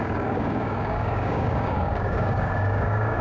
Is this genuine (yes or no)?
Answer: no